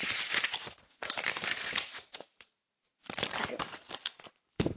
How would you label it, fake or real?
fake